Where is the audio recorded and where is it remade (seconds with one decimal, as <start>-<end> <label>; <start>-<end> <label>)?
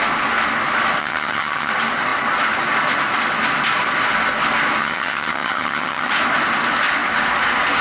0.0-1.0 recorded; 1.0-1.7 remade; 1.7-4.8 recorded; 4.8-6.1 remade; 6.1-7.8 recorded